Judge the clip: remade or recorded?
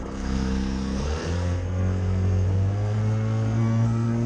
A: remade